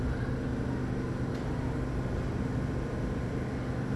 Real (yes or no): yes